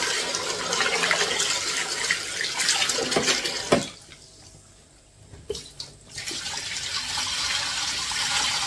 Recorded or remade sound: remade